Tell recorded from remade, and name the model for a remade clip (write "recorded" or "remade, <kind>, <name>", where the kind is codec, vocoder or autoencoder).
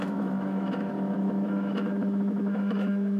remade, autoencoder, DAC-VAE